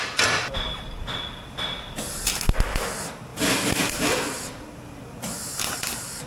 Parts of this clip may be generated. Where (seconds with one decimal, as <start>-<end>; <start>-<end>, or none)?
none